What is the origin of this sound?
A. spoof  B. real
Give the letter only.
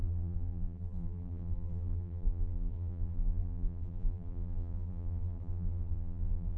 A